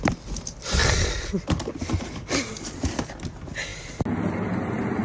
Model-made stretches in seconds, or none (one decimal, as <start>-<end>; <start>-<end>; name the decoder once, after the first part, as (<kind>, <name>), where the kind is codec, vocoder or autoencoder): none